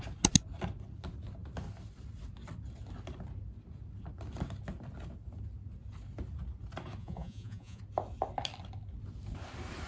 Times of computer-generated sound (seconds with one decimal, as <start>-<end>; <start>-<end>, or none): 7.0-7.8